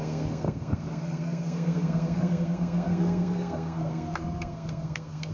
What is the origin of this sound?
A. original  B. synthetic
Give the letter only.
B